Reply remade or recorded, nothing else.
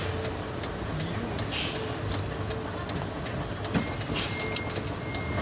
recorded